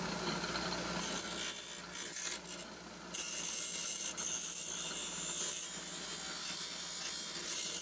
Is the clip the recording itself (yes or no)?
yes